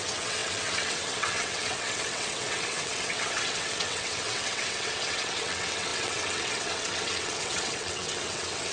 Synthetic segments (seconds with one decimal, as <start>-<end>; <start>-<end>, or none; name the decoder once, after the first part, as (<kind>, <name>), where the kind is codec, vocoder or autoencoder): 0.0-8.7 (vocoder, WaveNeXt)